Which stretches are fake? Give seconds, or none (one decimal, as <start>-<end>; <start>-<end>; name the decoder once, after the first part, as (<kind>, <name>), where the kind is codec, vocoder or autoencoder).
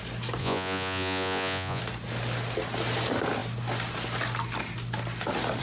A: 0.4-1.8 (vocoder, Vocos)